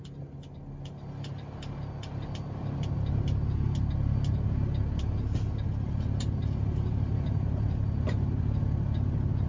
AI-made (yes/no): no